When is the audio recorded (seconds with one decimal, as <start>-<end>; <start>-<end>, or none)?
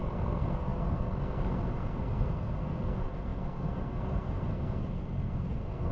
none